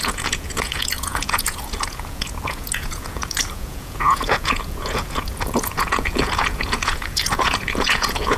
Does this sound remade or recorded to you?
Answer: remade